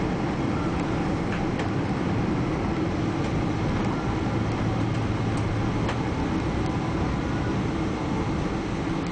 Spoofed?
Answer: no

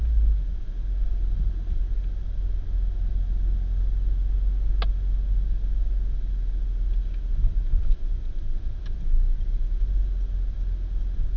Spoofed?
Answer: no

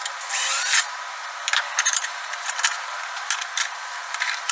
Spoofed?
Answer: yes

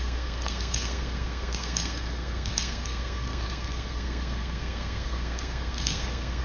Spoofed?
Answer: yes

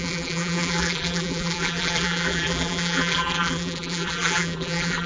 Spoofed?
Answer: yes